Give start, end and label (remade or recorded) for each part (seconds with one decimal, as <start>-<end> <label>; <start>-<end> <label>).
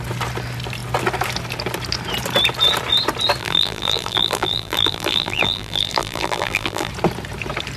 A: 0.0-3.4 recorded; 3.4-6.9 remade; 6.9-7.8 recorded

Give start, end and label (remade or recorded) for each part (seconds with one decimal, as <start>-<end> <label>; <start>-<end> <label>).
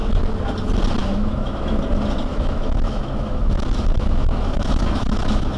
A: 0.0-1.0 recorded; 1.0-1.8 remade; 1.8-2.3 recorded; 2.3-5.6 remade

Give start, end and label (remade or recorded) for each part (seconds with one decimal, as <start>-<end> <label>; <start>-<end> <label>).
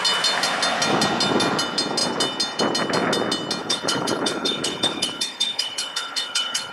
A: 0.0-3.6 recorded; 3.6-6.7 remade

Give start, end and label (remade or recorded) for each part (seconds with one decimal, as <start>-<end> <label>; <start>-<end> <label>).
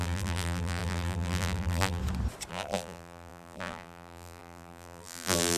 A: 0.0-2.0 remade; 2.0-2.5 recorded; 2.5-5.6 remade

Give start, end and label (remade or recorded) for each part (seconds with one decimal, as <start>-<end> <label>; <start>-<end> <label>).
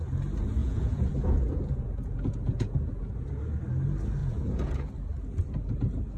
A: 0.0-0.6 recorded; 0.6-3.1 remade; 3.1-4.2 recorded; 4.2-4.9 remade; 4.9-6.2 recorded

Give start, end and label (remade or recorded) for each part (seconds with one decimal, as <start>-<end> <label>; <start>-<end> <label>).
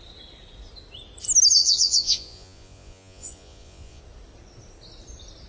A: 0.0-1.6 recorded; 1.6-4.0 remade; 4.0-5.5 recorded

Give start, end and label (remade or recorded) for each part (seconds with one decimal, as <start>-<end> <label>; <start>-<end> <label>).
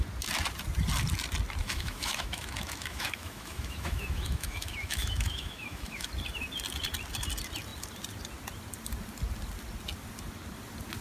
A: 0.0-1.6 recorded; 1.6-6.1 remade; 6.1-11.0 recorded